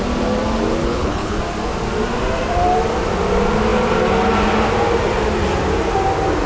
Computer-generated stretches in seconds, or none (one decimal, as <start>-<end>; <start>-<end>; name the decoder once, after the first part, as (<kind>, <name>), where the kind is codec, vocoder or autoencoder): 0.8-1.4 (codec, HILCodec)